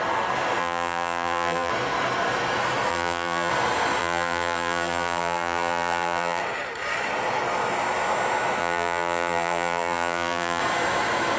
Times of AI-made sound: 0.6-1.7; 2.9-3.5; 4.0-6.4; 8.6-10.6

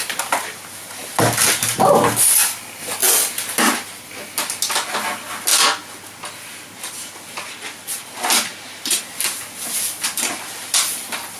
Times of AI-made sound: none

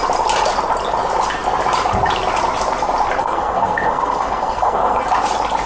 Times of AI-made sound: 3.2-5.0